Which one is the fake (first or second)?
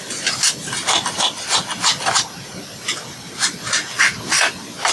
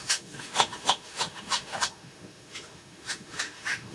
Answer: second